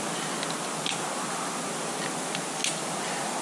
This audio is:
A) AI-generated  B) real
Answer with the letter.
B